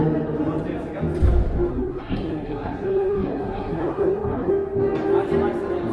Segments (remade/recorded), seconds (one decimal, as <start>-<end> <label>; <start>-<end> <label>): 0.0-1.7 recorded; 1.7-4.5 remade; 4.5-5.9 recorded